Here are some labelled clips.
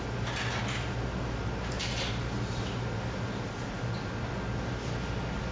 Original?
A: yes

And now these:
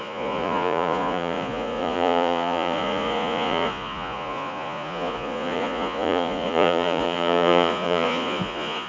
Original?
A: no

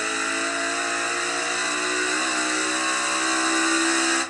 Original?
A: yes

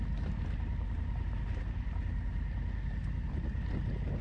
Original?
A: yes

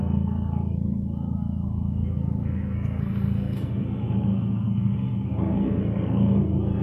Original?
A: no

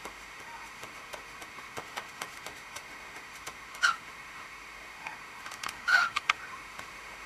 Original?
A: no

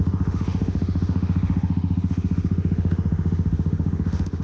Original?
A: no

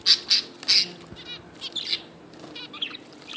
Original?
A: yes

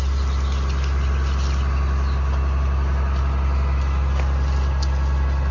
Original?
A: yes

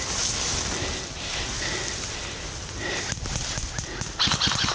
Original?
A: yes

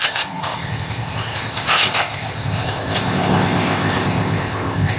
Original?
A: no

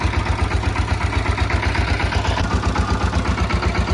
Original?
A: yes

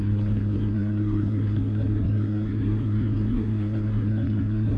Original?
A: no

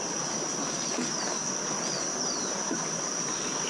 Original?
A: yes